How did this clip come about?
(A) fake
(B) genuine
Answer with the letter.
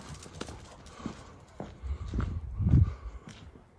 B